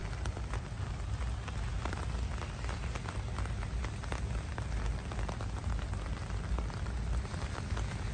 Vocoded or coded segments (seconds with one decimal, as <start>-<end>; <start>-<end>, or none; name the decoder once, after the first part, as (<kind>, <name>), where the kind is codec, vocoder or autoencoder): none